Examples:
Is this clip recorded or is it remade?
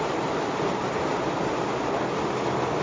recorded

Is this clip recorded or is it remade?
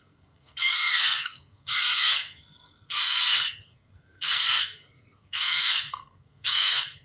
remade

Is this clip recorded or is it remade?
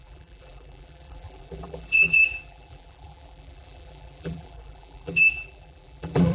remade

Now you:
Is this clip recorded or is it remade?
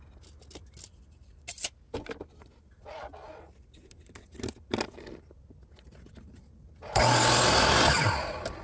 recorded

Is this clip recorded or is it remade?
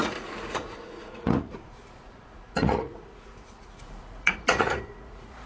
remade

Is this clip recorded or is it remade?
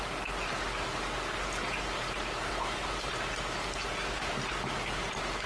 recorded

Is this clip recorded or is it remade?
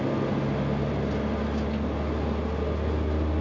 recorded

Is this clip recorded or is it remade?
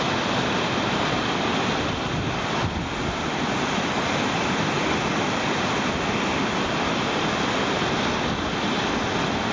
recorded